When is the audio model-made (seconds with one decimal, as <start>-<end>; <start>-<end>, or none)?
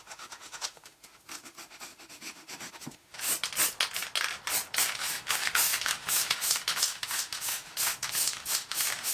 0.0-3.3; 4.8-9.1